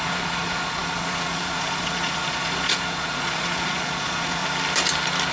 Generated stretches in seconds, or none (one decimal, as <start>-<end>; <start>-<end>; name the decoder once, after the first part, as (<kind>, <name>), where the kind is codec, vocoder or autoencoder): 0.0-4.4 (vocoder, Vocos)